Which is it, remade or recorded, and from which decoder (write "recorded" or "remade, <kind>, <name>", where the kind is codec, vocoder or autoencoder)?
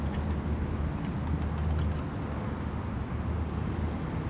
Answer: recorded